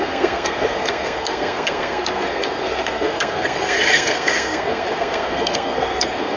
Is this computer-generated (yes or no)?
yes